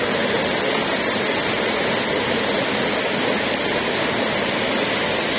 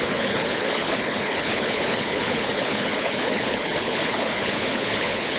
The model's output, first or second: second